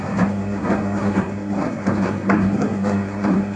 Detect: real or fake fake